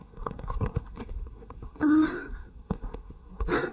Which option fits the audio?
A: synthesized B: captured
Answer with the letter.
A